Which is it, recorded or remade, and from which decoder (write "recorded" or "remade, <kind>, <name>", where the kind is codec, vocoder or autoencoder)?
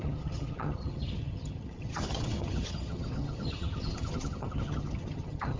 remade, vocoder, HiFi-GAN